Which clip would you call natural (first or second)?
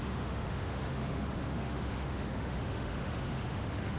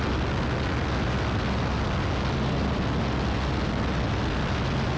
second